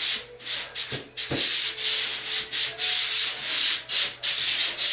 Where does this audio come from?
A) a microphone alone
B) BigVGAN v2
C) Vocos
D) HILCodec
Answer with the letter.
A